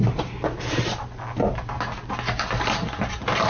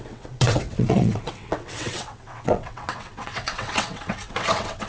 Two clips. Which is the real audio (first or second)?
first